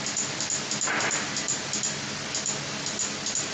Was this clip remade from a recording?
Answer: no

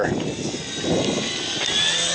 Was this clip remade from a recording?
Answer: no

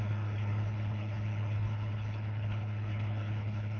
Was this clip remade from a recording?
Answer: yes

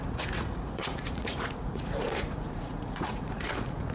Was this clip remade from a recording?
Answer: yes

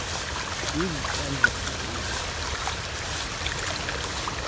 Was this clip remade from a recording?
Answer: no